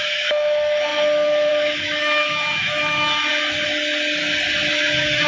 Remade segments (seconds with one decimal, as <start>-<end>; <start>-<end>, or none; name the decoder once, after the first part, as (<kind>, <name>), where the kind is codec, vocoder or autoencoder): 0.0-3.3 (autoencoder, DAC-VAE); 4.7-5.3